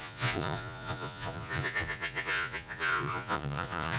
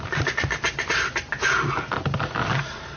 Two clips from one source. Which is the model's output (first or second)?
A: first